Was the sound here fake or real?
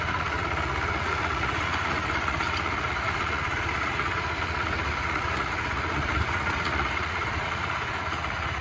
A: fake